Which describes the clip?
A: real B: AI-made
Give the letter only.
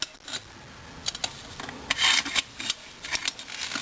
A